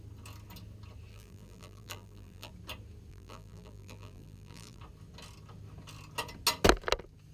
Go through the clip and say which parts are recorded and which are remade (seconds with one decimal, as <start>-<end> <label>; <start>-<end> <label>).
0.0-1.1 recorded; 1.1-2.5 remade; 2.5-3.1 recorded; 3.1-4.8 remade; 4.8-7.3 recorded